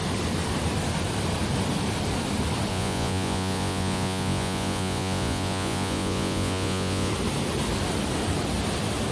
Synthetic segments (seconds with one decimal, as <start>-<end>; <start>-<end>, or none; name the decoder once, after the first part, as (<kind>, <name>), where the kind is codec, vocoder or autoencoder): 2.7-7.1 (vocoder, Vocos)